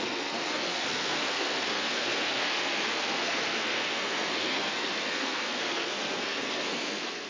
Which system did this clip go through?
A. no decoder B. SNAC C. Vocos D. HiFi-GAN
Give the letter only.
B